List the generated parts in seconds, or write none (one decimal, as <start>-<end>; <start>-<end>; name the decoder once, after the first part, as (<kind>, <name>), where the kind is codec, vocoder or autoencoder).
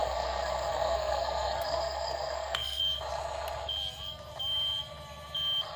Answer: 0.0-2.8 (codec, SNAC)